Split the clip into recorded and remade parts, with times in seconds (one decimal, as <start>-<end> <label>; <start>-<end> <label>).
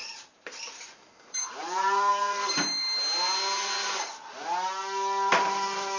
0.0-2.7 remade; 2.7-5.3 recorded; 5.3-6.0 remade